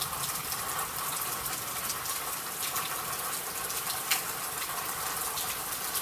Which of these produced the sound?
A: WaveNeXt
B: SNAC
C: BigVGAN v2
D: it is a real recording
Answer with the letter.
D